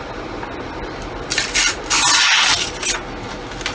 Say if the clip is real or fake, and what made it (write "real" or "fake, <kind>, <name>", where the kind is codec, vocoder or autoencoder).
real